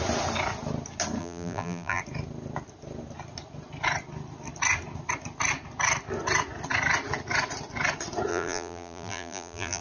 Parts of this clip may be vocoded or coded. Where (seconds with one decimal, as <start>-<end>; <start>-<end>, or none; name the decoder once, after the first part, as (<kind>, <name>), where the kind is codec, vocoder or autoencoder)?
1.2-2.0 (vocoder, BigVGAN v2); 8.3-9.8